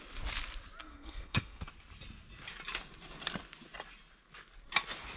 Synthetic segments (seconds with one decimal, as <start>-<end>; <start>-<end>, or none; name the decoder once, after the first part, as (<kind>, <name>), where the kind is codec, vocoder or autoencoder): 0.8-1.7 (codec, SNAC)